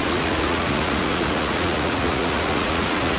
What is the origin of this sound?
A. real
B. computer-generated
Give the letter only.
B